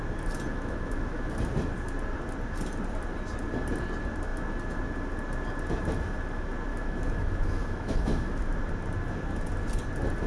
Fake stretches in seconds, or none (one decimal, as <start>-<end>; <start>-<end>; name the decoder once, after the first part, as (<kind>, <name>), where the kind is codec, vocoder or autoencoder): 0.5-1.4 (autoencoder, DAC-VAE); 6.7-8.4